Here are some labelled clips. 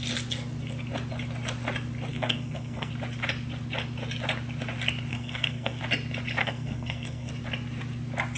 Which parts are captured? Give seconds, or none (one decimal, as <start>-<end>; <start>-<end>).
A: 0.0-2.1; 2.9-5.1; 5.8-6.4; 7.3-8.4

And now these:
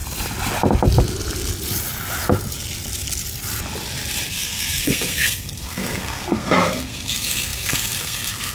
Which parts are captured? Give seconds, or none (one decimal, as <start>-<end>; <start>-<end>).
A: 0.0-4.3

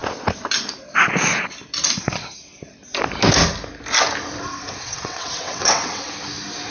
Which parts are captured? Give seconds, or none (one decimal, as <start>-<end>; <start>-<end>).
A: 0.0-4.5; 6.1-6.7